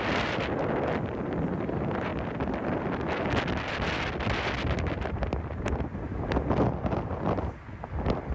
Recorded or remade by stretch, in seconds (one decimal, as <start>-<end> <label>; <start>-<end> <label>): 0.0-8.3 recorded